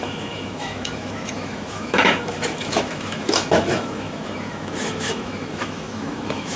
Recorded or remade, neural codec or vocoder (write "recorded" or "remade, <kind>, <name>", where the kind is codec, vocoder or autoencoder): remade, autoencoder, DAC-VAE